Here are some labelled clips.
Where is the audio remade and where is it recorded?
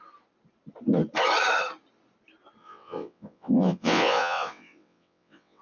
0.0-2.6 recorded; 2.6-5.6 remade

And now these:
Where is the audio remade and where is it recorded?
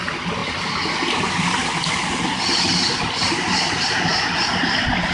0.0-5.1 recorded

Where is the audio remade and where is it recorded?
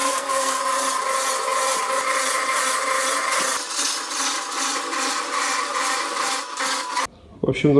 0.0-0.6 remade; 0.6-7.8 recorded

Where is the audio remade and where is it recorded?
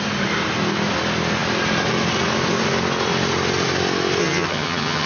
0.0-4.2 recorded; 4.2-5.1 remade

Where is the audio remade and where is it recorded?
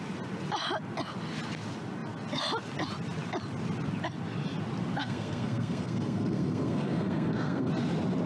0.0-5.0 recorded; 5.0-7.7 remade; 7.7-8.3 recorded